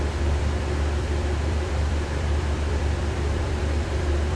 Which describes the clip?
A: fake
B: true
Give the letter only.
A